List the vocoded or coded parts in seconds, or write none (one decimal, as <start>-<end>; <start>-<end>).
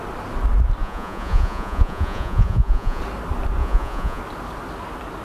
0.8-3.0; 3.6-4.2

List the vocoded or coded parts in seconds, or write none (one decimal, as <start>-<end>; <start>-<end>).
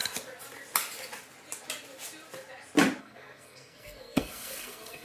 3.0-5.0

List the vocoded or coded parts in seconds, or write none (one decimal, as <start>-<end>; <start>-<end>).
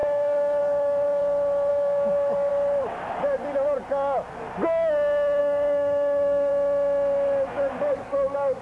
0.0-1.2; 1.7-2.5; 5.4-6.5; 7.7-8.6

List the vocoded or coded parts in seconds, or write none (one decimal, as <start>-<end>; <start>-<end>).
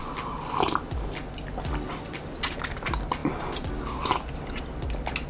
none